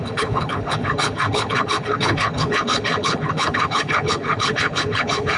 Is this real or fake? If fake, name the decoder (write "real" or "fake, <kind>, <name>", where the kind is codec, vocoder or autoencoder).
fake, codec, HILCodec